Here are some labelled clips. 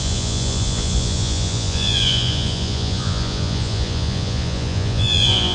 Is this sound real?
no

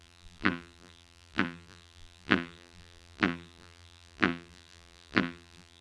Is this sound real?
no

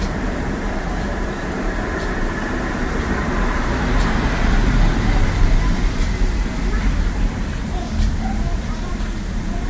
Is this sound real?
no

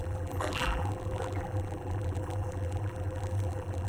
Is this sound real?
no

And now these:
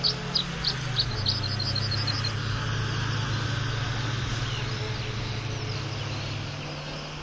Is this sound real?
yes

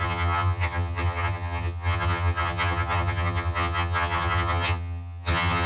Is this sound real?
no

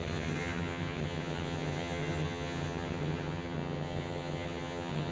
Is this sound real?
no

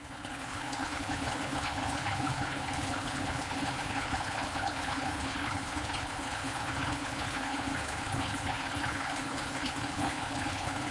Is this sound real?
no